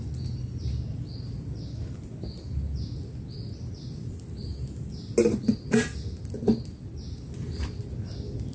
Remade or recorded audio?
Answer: recorded